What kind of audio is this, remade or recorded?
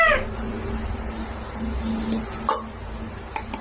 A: recorded